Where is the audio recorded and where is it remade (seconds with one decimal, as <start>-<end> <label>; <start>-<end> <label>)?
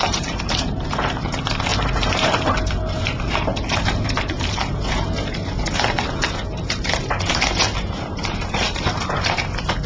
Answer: 0.0-9.9 remade